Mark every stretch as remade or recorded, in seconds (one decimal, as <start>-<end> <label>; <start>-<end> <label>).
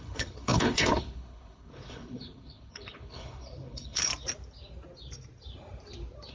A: 0.0-4.1 remade; 4.1-6.3 recorded